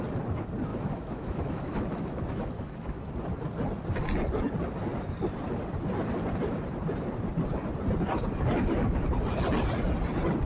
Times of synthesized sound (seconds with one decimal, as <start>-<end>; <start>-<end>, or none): 0.7-3.1